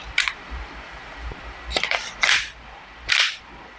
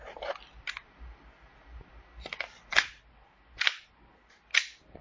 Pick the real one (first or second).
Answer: second